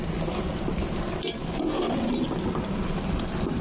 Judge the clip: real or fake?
real